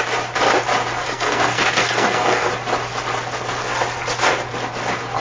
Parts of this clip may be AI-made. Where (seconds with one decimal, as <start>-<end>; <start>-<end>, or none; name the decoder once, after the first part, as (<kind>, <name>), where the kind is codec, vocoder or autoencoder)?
1.0-2.5 (codec, SNAC)